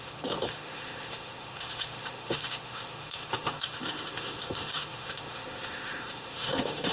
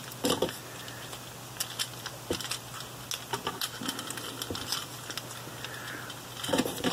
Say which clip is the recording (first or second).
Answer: second